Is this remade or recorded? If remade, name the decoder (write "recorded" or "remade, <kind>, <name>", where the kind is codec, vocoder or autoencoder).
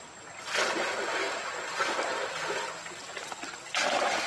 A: recorded